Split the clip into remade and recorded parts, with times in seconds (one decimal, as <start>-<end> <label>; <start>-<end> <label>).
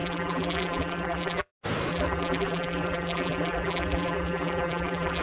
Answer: 0.0-1.5 remade; 1.5-1.9 recorded; 1.9-5.2 remade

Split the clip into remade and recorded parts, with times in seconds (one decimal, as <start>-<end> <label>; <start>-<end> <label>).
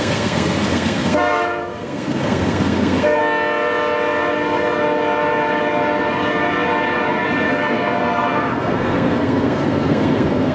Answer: 0.0-3.2 remade; 3.2-7.5 recorded; 7.5-10.5 remade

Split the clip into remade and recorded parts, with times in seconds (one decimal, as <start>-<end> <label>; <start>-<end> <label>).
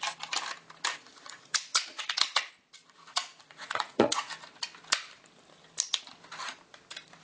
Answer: 0.0-0.9 recorded; 0.9-2.3 remade; 2.3-2.8 recorded; 2.8-4.3 remade; 4.3-7.2 recorded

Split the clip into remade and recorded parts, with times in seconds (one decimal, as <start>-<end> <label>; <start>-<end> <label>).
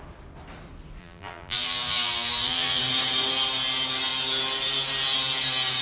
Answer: 0.0-1.0 recorded; 1.0-2.8 remade; 2.8-5.8 recorded